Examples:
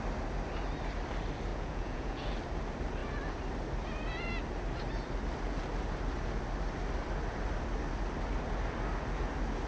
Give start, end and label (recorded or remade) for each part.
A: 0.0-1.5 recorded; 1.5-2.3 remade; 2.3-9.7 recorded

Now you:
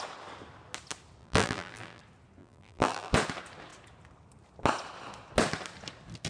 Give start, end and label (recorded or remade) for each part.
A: 0.0-1.2 recorded; 1.2-2.0 remade; 2.0-2.4 recorded; 2.4-3.1 remade; 3.1-6.3 recorded

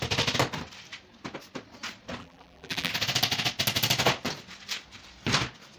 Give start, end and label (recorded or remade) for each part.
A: 0.0-2.2 recorded; 2.2-2.9 remade; 2.9-5.8 recorded

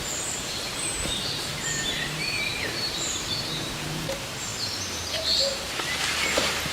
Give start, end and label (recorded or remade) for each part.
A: 0.0-6.7 remade